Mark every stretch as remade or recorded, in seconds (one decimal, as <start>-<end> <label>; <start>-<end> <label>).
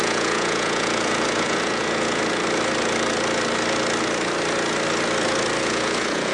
0.0-2.2 remade; 2.2-5.6 recorded; 5.6-6.3 remade